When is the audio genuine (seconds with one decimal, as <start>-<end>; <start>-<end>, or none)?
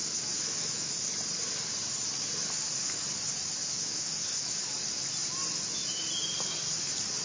1.0-3.6; 4.6-7.2